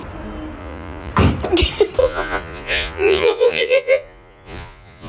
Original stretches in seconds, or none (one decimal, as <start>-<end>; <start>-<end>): 0.0-0.6; 1.1-2.0